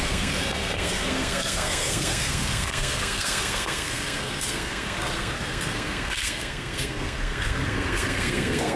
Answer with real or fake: fake